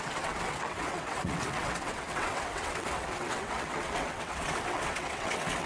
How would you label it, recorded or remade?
remade